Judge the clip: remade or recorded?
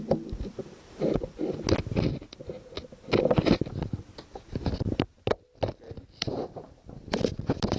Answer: recorded